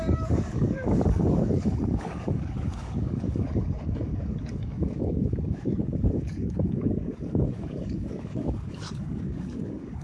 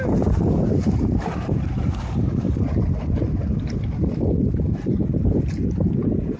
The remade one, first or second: first